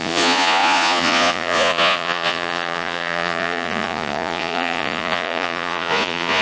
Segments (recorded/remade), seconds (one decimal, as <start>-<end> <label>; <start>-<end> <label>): 0.0-6.4 remade